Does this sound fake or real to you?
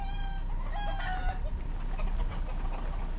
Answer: real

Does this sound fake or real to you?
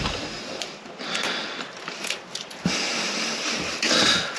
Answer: real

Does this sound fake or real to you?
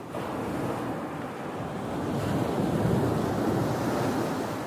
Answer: real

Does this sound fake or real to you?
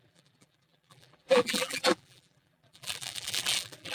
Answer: fake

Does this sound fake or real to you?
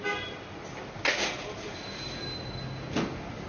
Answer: real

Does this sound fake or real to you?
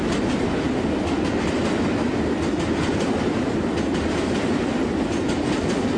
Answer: real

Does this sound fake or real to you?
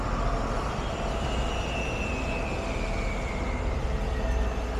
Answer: real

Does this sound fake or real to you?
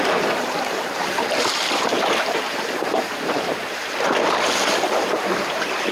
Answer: fake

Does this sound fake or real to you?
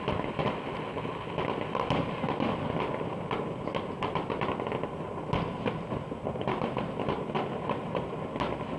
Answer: real